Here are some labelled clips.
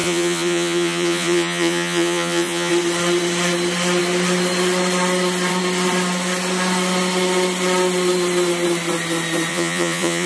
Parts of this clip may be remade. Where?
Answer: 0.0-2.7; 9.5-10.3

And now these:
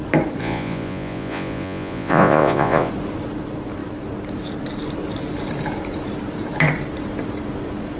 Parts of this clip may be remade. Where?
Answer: 0.4-2.9